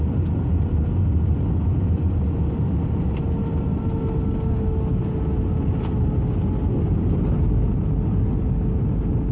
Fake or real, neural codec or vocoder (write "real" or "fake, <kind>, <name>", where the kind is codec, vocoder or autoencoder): real